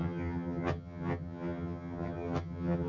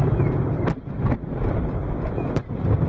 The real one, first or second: second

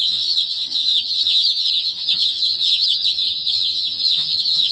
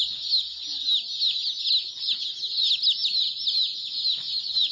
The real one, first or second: second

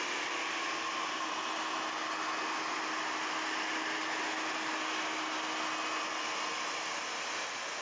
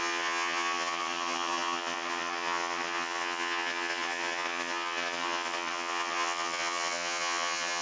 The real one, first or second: first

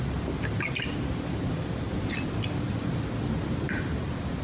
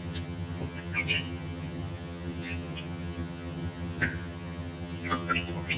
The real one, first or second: first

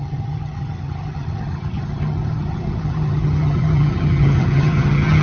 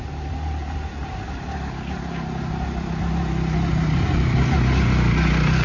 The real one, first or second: second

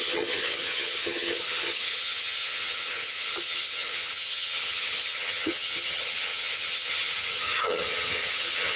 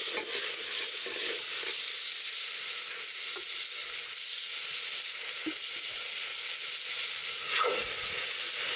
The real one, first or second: second